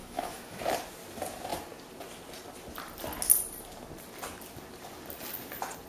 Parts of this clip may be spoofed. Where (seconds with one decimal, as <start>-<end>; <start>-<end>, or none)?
0.0-0.6